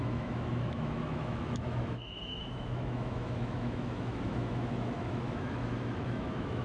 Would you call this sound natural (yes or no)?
no